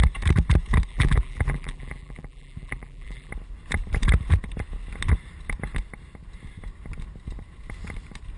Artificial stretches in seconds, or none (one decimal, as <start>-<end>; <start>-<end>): 0.9-3.3